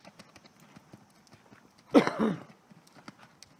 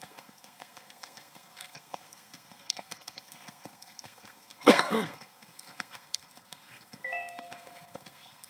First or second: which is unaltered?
first